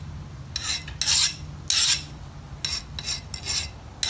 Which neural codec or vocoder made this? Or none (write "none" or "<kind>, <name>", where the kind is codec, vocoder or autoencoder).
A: none